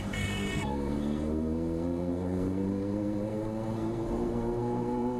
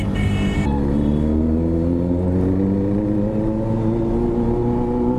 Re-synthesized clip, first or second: first